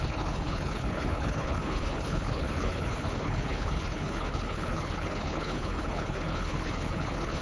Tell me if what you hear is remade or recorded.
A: remade